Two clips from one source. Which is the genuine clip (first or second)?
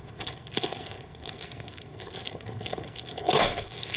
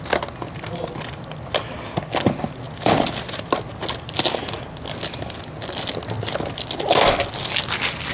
second